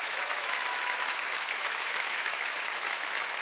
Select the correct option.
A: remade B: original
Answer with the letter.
A